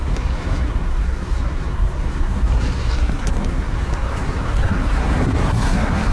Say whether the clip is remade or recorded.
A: remade